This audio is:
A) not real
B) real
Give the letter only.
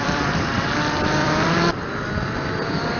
A